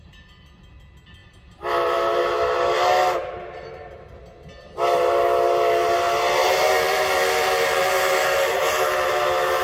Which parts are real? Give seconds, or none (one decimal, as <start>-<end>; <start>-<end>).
0.0-6.4; 9.1-9.6